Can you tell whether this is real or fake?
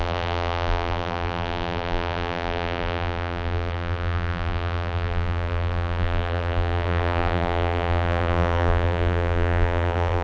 fake